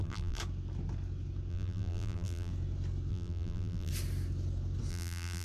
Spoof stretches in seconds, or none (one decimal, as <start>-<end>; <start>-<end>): 0.0-0.4; 1.5-2.5; 3.1-3.9; 4.9-5.4